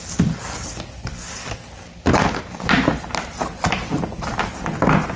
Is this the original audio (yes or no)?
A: yes